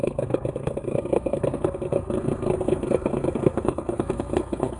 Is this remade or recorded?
remade